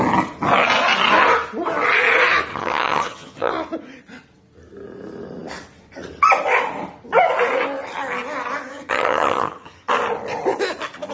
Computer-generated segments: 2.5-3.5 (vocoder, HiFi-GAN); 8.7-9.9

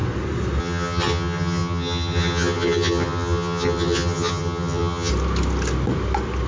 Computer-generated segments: 0.6-5.1 (vocoder, HiFi-GAN)

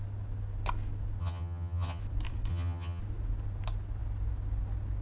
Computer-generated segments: 1.2-2.0 (vocoder, HiFi-GAN); 2.5-3.0

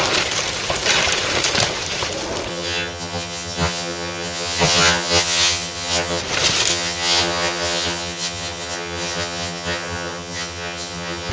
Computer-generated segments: 2.5-6.2 (vocoder, HiFi-GAN); 6.7-11.3

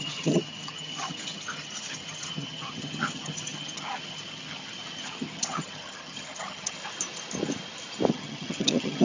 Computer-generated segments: 0.0-6.8 (vocoder, HiFi-GAN); 8.1-9.0

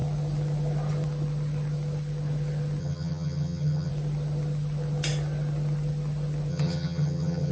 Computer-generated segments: 2.8-3.9 (vocoder, HiFi-GAN); 6.5-7.5